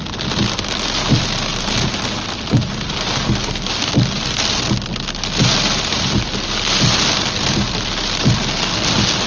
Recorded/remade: recorded